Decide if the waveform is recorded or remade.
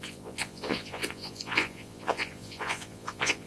remade